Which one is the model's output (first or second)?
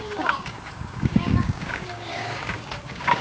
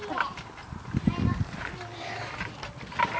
first